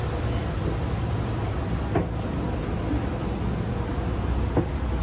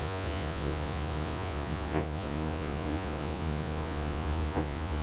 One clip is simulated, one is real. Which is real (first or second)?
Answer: first